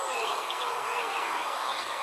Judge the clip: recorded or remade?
remade